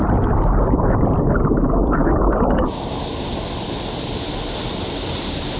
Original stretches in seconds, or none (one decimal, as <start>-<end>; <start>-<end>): 0.0-5.6